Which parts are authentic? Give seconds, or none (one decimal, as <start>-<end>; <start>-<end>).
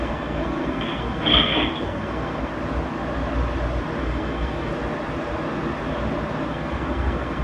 2.5-4.0; 4.7-6.5